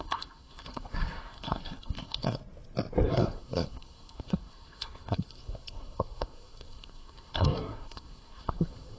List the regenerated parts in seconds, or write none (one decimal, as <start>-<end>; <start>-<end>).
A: 0.0-2.4; 3.1-9.0